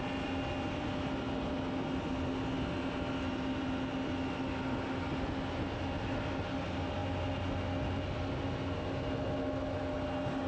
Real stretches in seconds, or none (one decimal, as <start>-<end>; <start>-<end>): 0.0-10.5